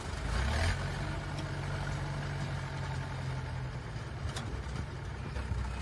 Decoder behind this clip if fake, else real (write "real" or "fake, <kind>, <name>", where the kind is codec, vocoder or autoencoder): real